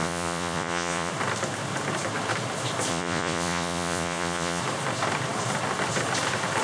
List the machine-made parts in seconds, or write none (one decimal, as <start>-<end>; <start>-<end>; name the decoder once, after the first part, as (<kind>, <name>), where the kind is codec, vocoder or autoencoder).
0.0-1.1 (vocoder, Vocos); 2.9-4.6